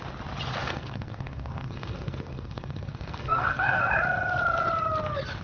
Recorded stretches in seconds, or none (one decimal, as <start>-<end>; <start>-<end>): 0.0-0.6; 3.8-5.4